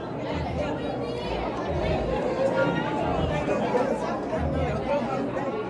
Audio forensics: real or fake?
real